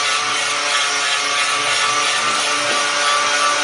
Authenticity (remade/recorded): recorded